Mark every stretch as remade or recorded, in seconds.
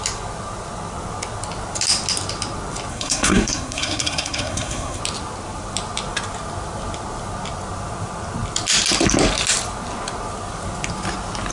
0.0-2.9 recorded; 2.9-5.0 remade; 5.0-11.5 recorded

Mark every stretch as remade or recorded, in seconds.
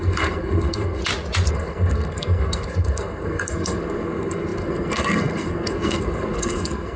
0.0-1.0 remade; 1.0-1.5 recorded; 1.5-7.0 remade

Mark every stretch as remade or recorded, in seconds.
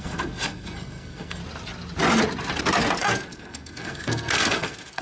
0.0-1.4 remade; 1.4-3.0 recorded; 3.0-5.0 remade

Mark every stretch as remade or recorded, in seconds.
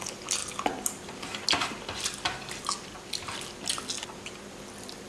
0.0-5.1 recorded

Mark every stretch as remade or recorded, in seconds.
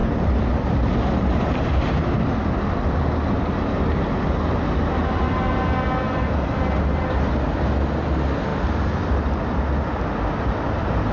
0.0-11.1 recorded